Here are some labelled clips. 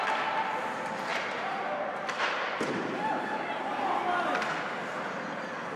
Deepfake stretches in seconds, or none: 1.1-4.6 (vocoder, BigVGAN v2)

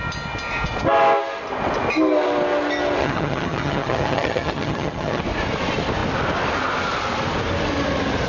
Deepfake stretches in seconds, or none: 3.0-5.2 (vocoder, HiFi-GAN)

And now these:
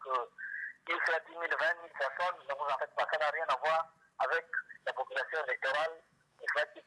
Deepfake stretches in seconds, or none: 1.8-2.8 (autoencoder, DAC-VAE); 4.8-6.5

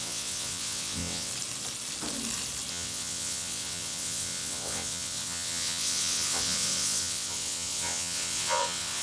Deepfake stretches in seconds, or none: 0.0-1.3 (vocoder, WaveNeXt); 2.7-9.0

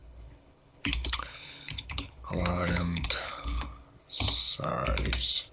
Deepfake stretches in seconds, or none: 0.0-4.7 (codec, HILCodec)

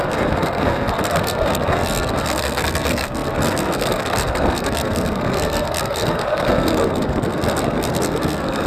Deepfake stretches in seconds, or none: 0.0-8.7 (codec, SNAC)

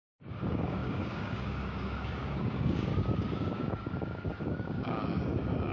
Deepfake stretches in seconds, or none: 0.0-5.7 (codec, DAC)